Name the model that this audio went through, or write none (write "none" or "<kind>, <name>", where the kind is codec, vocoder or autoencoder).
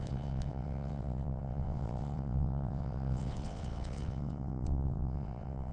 vocoder, WaveNeXt